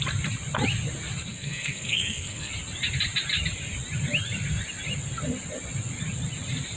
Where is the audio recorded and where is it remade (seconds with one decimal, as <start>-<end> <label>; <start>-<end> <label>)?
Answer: 0.0-1.3 recorded; 1.3-2.5 remade; 2.5-6.8 recorded